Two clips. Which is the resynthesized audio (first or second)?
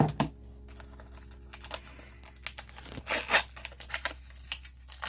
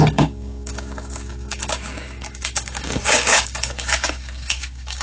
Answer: second